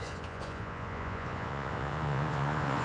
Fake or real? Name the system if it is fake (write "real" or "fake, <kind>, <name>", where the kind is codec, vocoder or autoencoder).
fake, vocoder, Vocos